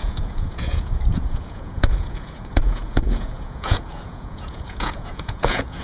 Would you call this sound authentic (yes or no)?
no